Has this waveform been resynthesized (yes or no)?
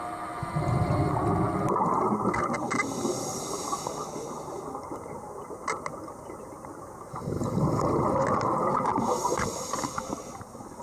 no